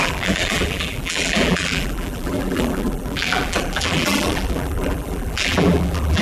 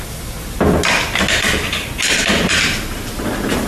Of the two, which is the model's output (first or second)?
first